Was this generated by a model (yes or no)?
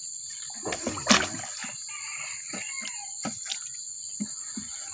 no